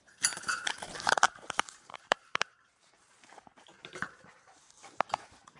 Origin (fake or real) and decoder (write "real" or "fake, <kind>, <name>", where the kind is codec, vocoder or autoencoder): fake, vocoder, BigVGAN v2